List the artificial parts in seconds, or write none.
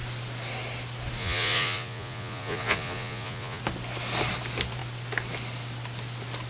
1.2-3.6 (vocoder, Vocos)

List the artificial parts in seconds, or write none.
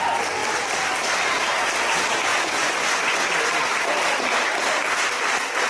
2.3-3.5 (vocoder, Vocos)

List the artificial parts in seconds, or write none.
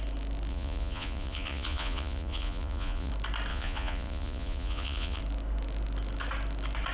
0.5-3.1 (vocoder, Vocos); 3.5-5.2